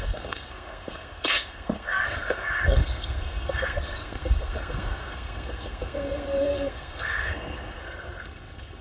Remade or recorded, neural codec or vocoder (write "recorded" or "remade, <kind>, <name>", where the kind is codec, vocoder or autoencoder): remade, codec, SNAC